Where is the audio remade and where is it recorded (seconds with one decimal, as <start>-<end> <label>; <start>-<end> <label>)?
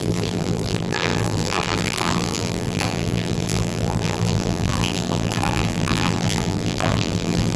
0.0-7.6 remade